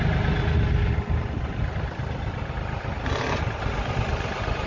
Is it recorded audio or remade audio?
recorded